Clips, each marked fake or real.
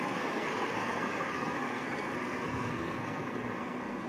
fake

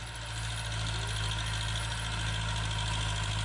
real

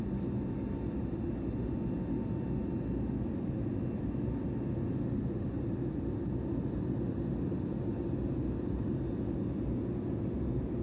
real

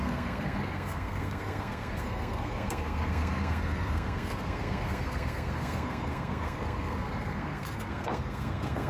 fake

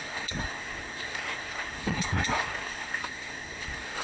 fake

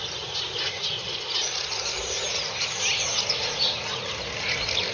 real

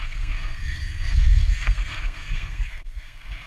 fake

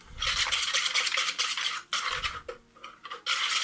real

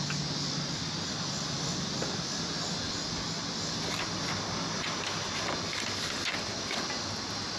real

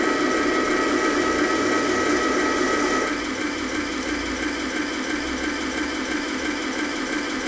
real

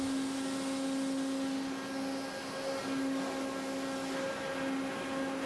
real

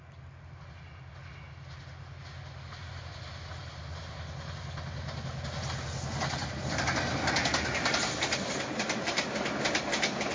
real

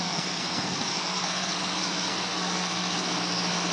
fake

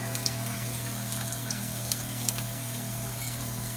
fake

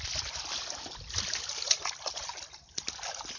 real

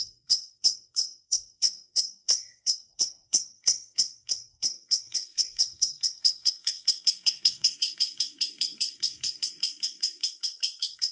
fake